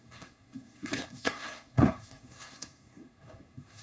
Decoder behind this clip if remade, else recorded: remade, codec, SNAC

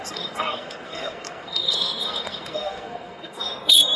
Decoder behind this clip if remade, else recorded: remade, codec, SNAC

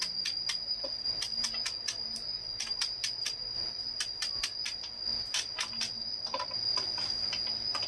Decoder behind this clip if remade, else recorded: recorded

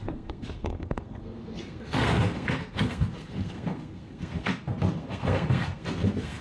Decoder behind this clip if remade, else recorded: remade, codec, SNAC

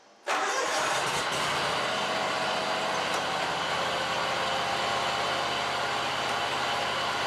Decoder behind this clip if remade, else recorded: recorded